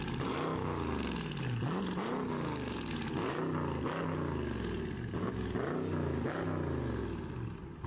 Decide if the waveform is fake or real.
real